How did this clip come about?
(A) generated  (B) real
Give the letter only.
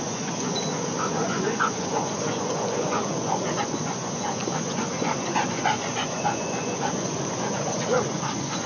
A